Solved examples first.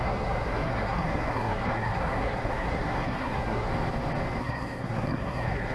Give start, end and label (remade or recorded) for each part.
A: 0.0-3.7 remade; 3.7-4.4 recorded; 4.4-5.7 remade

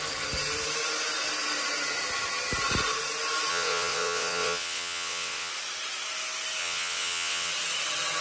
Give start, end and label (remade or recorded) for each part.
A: 0.0-3.5 recorded; 3.5-5.5 remade; 5.5-6.6 recorded; 6.6-7.5 remade; 7.5-8.2 recorded

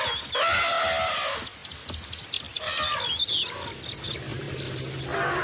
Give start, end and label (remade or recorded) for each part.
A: 0.0-2.5 recorded; 2.5-3.1 remade; 3.1-4.3 recorded; 4.3-5.0 remade; 5.0-5.4 recorded

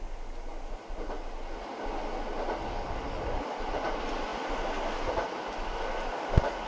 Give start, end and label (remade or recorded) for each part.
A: 0.0-2.6 recorded; 2.6-3.4 remade; 3.4-6.7 recorded

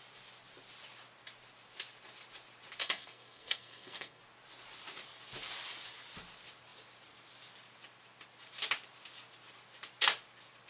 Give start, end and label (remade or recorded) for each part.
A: 0.0-2.8 recorded; 2.8-4.2 remade; 4.2-10.7 recorded

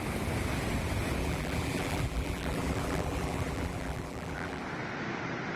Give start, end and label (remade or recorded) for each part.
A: 0.0-1.2 recorded; 1.2-4.6 remade; 4.6-5.6 recorded

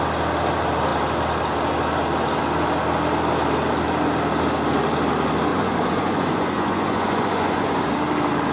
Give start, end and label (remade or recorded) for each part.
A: 0.0-5.5 recorded; 5.5-7.9 remade; 7.9-8.5 recorded